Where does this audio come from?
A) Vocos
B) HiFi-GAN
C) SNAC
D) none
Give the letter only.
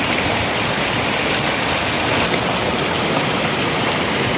D